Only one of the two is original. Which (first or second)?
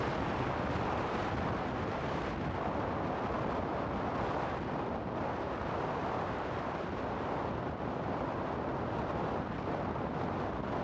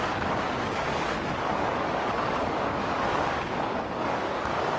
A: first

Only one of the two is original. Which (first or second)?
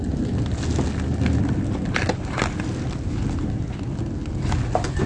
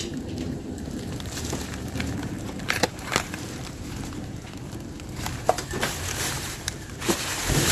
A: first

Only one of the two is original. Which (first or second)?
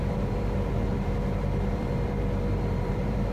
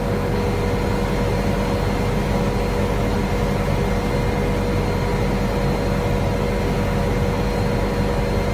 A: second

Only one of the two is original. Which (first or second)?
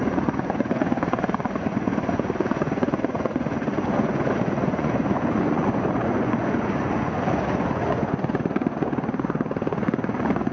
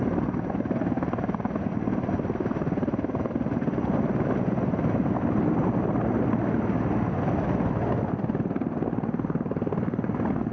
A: second